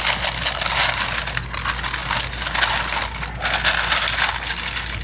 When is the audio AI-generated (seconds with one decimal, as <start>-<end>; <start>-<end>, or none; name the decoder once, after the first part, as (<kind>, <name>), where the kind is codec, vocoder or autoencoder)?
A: none